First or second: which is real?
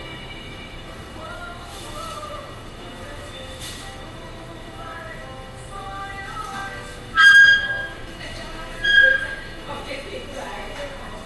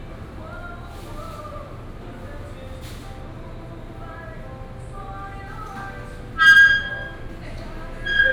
second